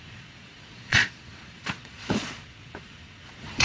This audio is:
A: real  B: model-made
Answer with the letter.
B